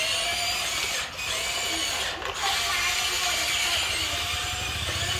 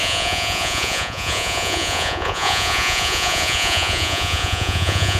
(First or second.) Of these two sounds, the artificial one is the second